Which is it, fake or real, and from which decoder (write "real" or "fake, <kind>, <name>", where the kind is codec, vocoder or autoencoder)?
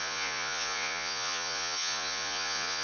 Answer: fake, vocoder, Vocos